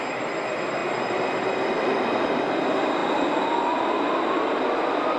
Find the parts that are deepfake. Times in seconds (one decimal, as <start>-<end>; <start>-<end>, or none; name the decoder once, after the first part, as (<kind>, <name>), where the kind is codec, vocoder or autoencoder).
none